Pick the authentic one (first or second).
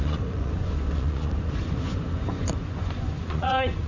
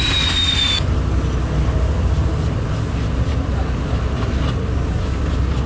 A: second